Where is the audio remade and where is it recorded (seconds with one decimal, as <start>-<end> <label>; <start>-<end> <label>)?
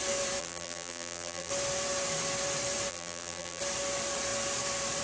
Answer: 0.0-0.4 recorded; 0.4-1.5 remade; 1.5-2.9 recorded; 2.9-3.6 remade; 3.6-5.0 recorded